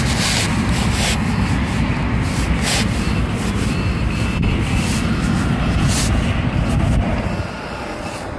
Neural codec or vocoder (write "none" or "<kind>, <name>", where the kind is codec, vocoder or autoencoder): none